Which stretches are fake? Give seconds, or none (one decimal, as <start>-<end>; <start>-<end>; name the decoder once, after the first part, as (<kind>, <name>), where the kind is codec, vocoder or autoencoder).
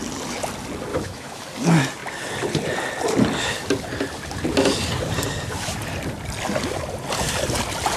0.9-1.5 (autoencoder, DAC-VAE)